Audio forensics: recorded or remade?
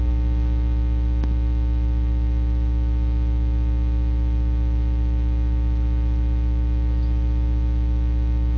recorded